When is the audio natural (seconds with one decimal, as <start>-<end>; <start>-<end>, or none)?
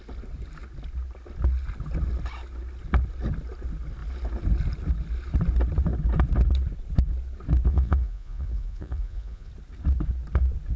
0.0-7.7; 9.5-10.8